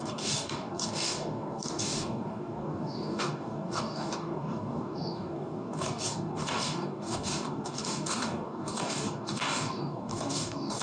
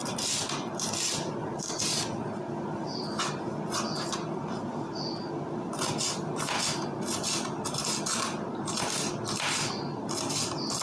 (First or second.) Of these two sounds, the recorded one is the second